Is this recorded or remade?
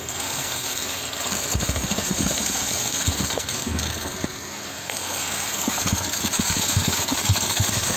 remade